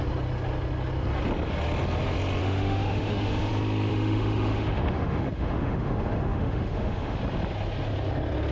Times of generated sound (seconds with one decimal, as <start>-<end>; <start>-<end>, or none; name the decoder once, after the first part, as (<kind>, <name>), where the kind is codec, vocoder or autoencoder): 2.4-3.5 (autoencoder, DAC-VAE); 3.9-7.2